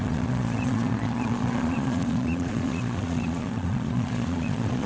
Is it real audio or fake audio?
fake